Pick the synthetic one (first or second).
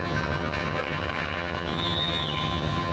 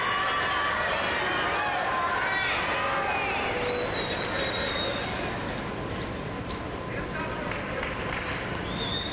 first